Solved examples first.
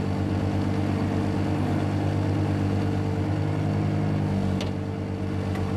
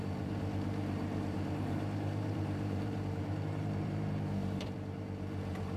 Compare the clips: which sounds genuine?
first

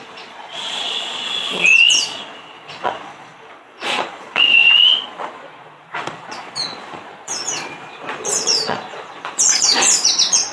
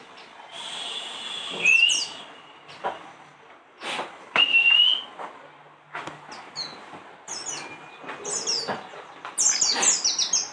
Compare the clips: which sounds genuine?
second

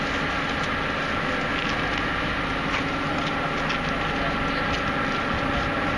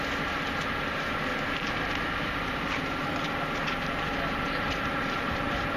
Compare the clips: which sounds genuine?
first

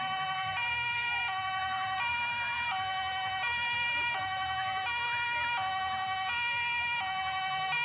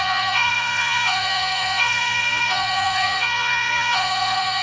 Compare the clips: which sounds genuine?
first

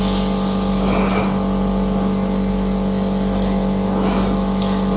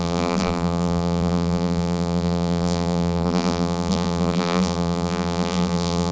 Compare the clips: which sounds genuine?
first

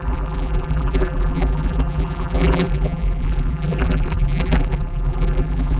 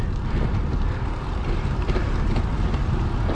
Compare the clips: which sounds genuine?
second